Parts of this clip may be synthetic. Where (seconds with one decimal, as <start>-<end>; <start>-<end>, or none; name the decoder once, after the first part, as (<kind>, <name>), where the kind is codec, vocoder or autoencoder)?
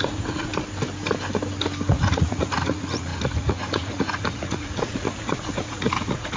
0.0-0.5 (vocoder, Vocos); 1.9-6.4